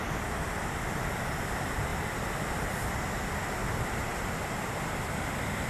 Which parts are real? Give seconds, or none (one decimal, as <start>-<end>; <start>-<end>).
0.0-5.7